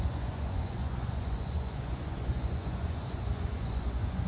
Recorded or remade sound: remade